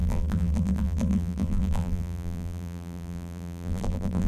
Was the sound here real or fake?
fake